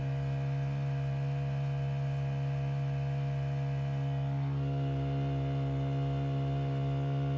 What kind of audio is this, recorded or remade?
recorded